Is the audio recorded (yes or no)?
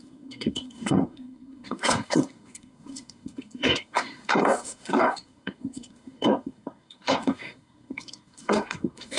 no